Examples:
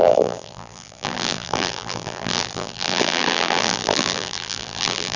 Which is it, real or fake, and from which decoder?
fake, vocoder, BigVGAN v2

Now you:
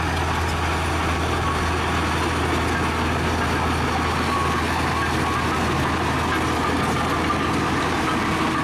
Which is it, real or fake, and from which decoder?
real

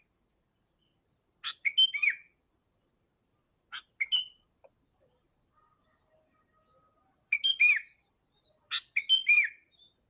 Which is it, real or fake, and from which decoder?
real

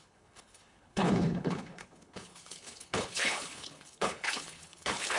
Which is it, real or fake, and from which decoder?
fake, codec, HILCodec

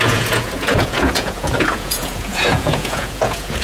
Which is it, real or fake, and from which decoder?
fake, vocoder, Vocos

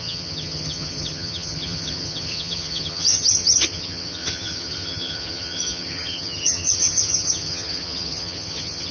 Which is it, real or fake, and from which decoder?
fake, vocoder, HiFi-GAN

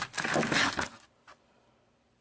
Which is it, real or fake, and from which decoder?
real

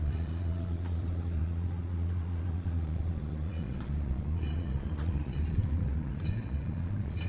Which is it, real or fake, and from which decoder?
fake, vocoder, Vocos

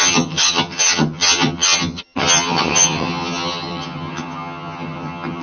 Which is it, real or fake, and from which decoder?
fake, vocoder, HiFi-GAN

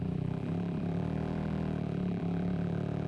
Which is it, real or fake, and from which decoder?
fake, vocoder, BigVGAN v2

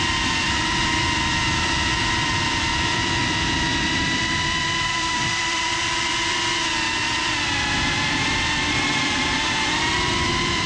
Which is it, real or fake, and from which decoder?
fake, vocoder, BigVGAN v2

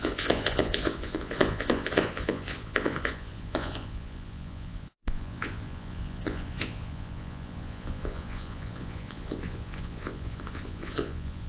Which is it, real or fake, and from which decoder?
fake, vocoder, Vocos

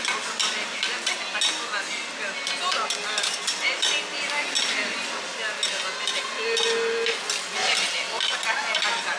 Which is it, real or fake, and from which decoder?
real